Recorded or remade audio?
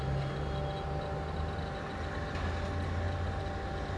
recorded